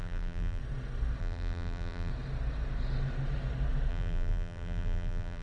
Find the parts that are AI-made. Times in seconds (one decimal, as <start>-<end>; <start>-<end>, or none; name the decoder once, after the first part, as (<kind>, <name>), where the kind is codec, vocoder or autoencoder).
0.0-0.6 (vocoder, BigVGAN v2); 1.2-2.1; 3.9-5.4